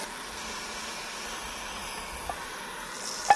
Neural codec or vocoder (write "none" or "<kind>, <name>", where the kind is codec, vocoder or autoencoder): none